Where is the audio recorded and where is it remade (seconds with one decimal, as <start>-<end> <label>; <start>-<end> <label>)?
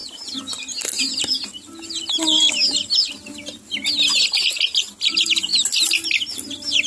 0.0-6.9 recorded